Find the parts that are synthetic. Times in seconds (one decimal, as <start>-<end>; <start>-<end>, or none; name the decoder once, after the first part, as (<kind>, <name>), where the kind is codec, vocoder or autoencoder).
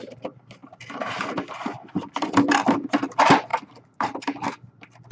none